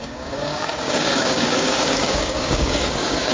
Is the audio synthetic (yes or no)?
yes